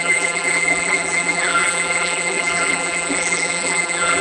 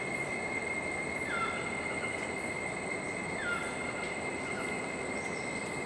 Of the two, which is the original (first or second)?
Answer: second